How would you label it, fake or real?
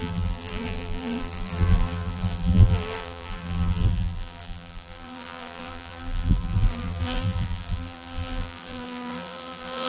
fake